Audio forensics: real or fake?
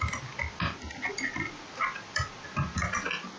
real